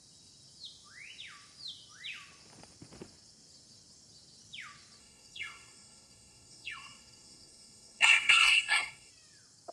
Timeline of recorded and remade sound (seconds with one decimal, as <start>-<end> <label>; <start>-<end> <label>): 0.0-5.0 recorded; 5.0-9.1 remade; 9.1-9.7 recorded